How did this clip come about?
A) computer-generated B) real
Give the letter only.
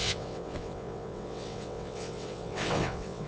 A